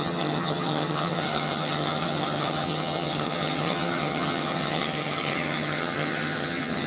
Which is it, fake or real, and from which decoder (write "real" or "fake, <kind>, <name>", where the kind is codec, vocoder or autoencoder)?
fake, vocoder, HiFi-GAN